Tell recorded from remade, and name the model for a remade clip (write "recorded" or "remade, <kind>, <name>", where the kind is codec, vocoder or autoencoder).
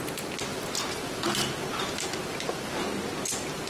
recorded